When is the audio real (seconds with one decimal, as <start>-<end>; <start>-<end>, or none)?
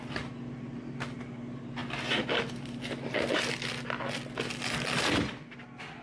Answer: 0.0-6.0